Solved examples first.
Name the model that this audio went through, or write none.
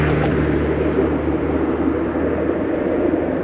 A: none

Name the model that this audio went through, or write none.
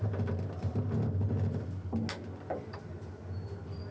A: none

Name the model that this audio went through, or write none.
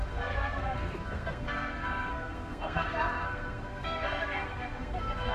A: codec, SNAC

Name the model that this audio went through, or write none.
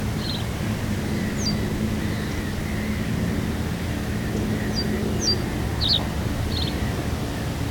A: none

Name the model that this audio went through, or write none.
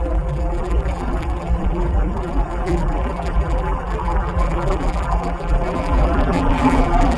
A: vocoder, BigVGAN v2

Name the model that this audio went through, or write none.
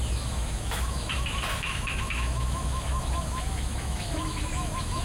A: autoencoder, DAC-VAE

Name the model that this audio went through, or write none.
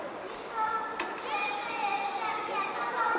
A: none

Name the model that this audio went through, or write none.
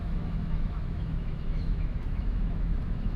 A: autoencoder, DAC-VAE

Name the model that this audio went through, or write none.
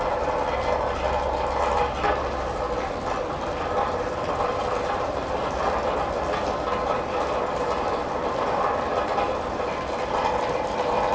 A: none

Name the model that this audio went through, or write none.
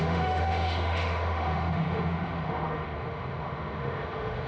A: autoencoder, DAC-VAE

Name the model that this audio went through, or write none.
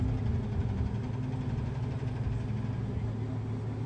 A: none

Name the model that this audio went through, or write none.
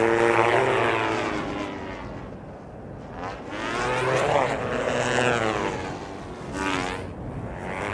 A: none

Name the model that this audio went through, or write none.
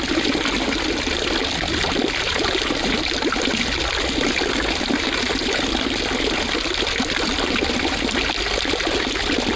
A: none